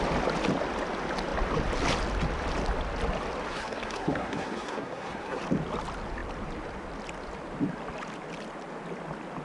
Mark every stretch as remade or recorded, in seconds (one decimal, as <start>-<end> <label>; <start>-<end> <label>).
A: 0.0-3.5 recorded; 3.5-5.4 remade; 5.4-9.4 recorded